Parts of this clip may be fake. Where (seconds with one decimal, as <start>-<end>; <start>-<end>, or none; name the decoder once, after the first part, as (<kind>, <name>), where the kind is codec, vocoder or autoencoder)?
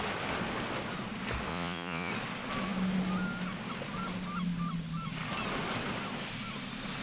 1.5-2.1 (vocoder, Vocos)